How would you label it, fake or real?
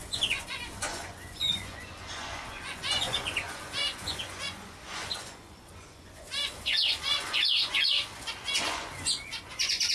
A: fake